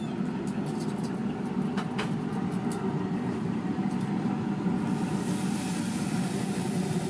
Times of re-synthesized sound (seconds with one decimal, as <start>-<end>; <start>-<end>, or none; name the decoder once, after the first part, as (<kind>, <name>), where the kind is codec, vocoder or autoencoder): none